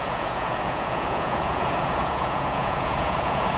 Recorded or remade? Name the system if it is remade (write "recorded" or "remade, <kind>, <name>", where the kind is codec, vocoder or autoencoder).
remade, vocoder, Vocos